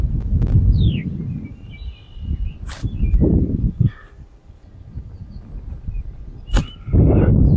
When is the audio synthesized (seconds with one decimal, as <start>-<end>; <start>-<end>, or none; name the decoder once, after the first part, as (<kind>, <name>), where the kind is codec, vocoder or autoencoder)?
2.8-5.3 (vocoder, BigVGAN v2)